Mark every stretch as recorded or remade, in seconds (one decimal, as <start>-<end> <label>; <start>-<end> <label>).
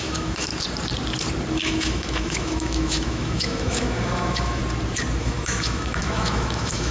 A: 0.0-0.5 remade; 0.5-1.5 recorded; 1.5-4.6 remade; 4.6-5.2 recorded; 5.2-6.9 remade